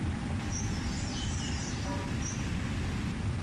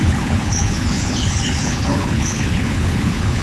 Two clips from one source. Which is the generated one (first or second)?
second